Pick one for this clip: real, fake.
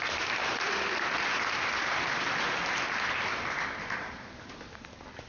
real